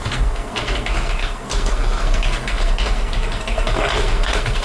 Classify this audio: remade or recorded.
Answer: remade